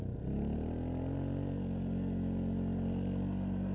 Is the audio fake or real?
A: real